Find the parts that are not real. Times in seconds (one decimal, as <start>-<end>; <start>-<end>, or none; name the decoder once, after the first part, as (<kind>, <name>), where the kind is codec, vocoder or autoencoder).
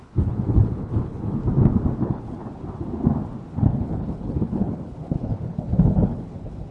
0.0-1.4 (codec, HILCodec); 2.0-2.4; 3.5-6.7